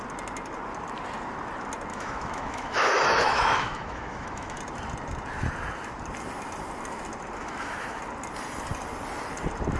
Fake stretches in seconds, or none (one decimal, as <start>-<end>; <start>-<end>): 1.9-4.6; 7.4-8.0